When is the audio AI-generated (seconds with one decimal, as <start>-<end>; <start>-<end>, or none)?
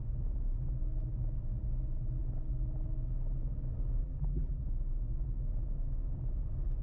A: 4.0-4.6